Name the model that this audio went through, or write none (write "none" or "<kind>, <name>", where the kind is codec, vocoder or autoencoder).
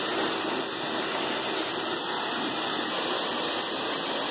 none